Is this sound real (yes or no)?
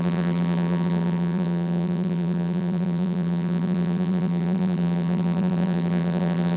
no